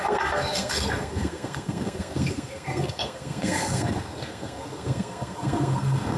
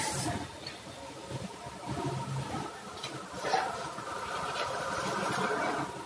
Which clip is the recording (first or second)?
second